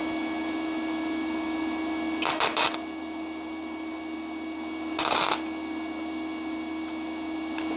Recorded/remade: recorded